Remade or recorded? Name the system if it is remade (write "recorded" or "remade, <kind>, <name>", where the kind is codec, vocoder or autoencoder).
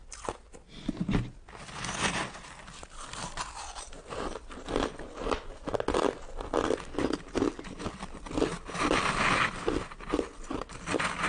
recorded